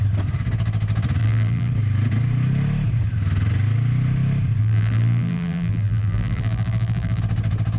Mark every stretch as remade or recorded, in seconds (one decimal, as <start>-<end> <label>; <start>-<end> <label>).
0.0-1.2 recorded; 1.2-1.7 remade; 1.7-4.6 recorded; 4.6-7.2 remade; 7.2-7.8 recorded